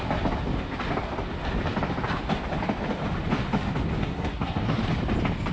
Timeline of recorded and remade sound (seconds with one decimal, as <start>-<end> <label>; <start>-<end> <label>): 0.0-4.0 recorded; 4.0-4.8 remade; 4.8-5.5 recorded